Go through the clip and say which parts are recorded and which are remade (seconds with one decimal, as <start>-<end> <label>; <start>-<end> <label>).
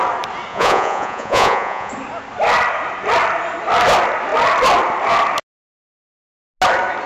0.0-0.5 recorded; 0.5-1.9 remade; 1.9-7.1 recorded